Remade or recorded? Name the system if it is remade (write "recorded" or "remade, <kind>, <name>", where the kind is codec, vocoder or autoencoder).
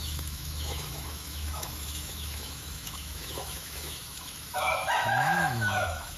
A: remade, autoencoder, DAC-VAE